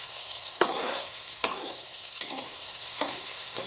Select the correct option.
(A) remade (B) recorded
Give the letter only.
A